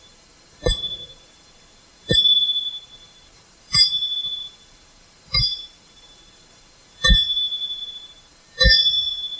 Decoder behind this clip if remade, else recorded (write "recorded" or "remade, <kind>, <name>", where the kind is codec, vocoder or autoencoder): remade, vocoder, BigVGAN v2